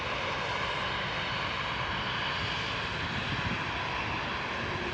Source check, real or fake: real